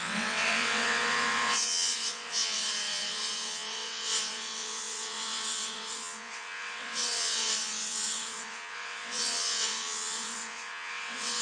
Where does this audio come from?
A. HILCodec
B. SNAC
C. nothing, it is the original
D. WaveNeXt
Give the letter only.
D